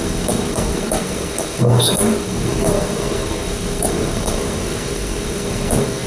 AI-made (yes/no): yes